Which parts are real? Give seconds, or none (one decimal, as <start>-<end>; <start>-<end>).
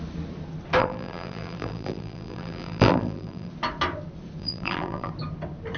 0.0-0.8; 3.5-4.4; 5.1-5.8